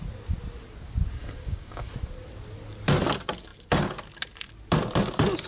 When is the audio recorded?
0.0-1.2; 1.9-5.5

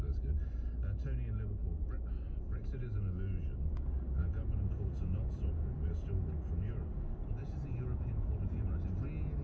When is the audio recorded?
0.0-4.2; 6.7-7.4; 8.7-9.4

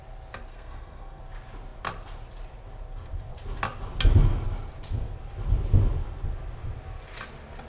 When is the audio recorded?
0.0-0.5; 1.2-7.7

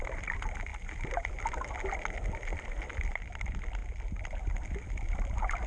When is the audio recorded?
3.8-4.4

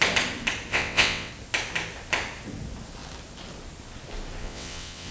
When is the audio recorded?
0.0-0.7; 1.3-4.4

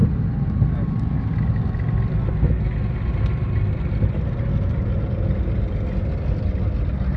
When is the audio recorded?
0.0-7.2